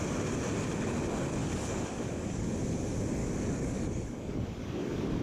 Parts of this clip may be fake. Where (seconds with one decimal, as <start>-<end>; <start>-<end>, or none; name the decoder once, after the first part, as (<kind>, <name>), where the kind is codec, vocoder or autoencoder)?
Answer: 1.4-2.5 (codec, DAC); 3.2-5.2